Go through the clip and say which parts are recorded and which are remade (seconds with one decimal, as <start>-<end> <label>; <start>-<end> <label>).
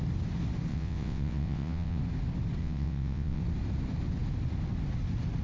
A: 0.0-0.7 recorded; 0.7-2.0 remade; 2.0-2.6 recorded; 2.6-3.4 remade; 3.4-5.4 recorded